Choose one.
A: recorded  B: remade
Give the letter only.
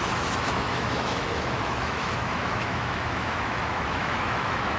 B